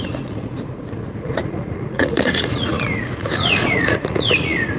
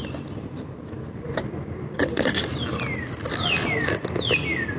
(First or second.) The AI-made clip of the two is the first